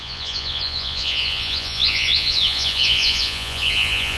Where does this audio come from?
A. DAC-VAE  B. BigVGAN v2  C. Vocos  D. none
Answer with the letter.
C